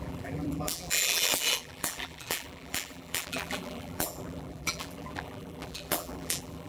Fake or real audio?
fake